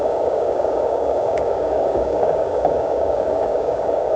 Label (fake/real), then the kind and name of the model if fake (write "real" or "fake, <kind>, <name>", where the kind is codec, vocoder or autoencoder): fake, codec, DAC